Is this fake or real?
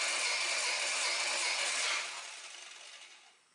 real